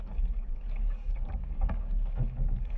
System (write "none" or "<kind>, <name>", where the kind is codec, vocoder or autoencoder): codec, DAC